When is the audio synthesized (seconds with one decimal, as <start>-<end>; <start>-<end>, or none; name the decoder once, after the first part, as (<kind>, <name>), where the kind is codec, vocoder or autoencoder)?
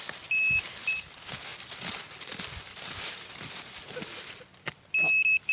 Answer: none